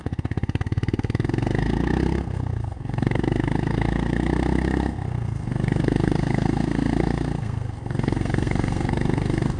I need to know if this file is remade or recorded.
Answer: remade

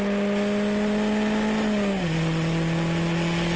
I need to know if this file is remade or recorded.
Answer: recorded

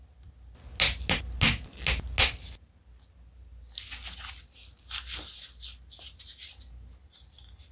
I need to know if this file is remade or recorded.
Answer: recorded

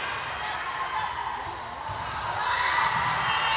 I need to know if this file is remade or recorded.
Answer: recorded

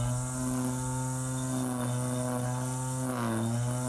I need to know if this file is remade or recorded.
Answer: recorded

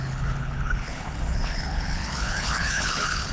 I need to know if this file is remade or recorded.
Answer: remade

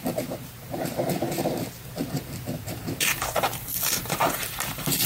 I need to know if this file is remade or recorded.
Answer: remade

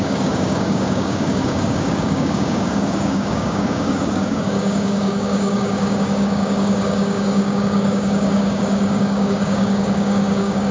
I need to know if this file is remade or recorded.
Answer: remade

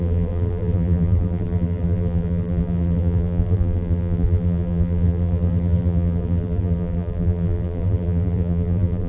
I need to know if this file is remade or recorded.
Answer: remade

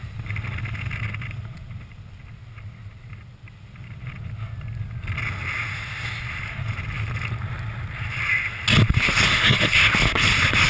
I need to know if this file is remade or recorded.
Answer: recorded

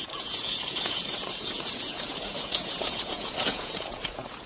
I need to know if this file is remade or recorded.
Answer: remade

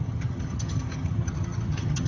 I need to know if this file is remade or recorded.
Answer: remade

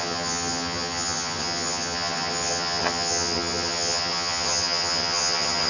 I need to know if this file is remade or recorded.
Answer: remade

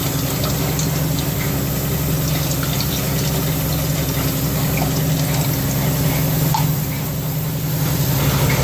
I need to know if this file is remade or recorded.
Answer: recorded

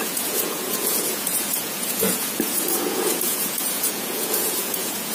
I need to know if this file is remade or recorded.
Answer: remade